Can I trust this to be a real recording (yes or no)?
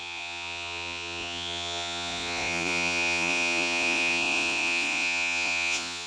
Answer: no